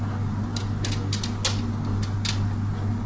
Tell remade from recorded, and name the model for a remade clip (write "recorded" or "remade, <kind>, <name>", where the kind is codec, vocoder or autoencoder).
recorded